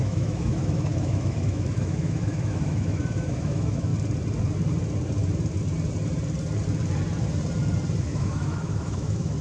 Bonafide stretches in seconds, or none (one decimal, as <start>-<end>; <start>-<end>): 3.9-8.0